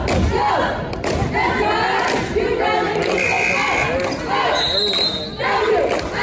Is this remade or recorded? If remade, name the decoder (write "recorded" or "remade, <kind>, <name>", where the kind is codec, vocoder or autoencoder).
recorded